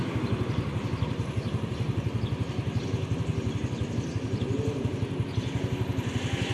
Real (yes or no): yes